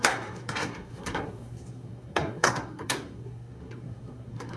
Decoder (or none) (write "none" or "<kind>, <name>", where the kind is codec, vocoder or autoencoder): codec, SNAC